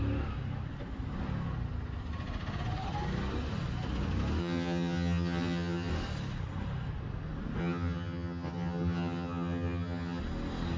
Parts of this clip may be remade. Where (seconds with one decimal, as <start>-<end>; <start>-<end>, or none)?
4.4-5.9; 7.6-10.2